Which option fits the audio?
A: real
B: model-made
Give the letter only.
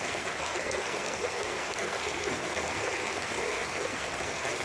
B